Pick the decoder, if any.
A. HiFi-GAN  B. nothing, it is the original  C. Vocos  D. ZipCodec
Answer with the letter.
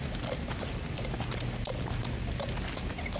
B